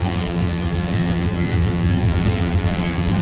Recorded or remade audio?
remade